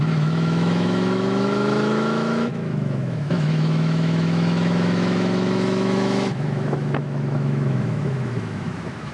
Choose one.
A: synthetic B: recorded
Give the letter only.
A